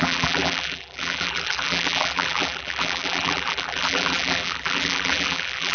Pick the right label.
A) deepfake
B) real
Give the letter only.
A